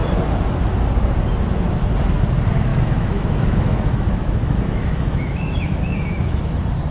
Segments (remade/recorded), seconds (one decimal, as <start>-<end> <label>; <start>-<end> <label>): 0.0-2.7 recorded; 2.7-6.4 remade; 6.4-6.9 recorded